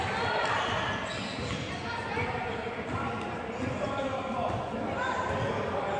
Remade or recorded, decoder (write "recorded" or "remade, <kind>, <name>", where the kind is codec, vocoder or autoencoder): remade, vocoder, BigVGAN v2